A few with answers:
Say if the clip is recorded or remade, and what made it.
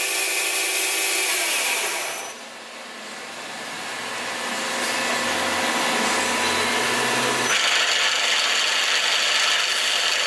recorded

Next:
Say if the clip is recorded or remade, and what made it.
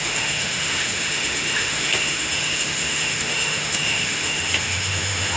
remade, autoencoder, DAC-VAE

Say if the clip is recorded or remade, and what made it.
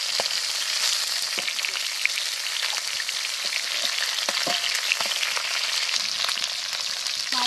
recorded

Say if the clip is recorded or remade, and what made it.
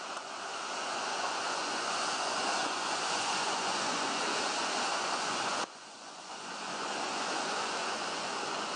remade, vocoder, Vocos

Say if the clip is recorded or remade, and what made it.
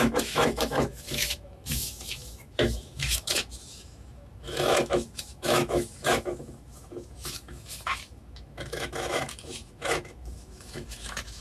remade, autoencoder, DAC-VAE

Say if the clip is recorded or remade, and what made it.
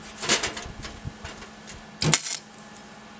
recorded